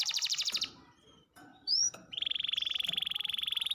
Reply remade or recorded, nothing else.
remade